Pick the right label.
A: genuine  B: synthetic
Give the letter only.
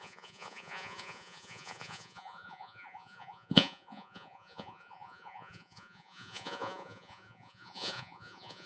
B